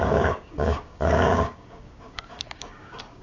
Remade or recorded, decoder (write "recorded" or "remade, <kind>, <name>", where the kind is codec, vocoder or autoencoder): remade, codec, DAC